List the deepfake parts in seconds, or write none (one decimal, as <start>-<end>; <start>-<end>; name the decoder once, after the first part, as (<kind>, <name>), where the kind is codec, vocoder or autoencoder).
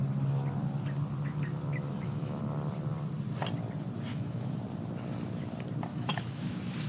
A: 1.9-2.4 (autoencoder, DAC-VAE); 4.1-4.6; 5.9-6.5